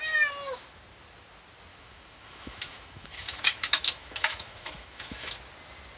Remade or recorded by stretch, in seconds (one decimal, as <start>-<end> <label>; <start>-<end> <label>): 0.0-1.7 recorded; 1.7-5.3 remade; 5.3-6.0 recorded